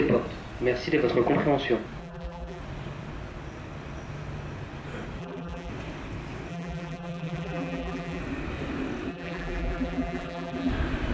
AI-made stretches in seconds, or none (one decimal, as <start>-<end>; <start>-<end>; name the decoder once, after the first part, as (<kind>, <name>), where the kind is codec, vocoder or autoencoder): 2.0-2.6 (vocoder, BigVGAN v2); 5.2-5.7; 6.5-8.2; 9.1-10.7